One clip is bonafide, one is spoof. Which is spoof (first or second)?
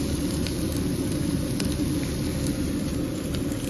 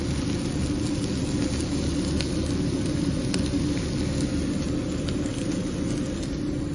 first